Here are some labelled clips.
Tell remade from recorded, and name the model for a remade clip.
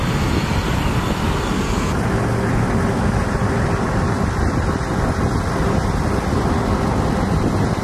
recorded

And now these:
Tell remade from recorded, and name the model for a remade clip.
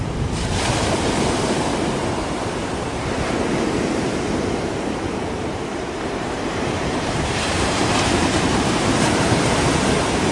remade, vocoder, BigVGAN v2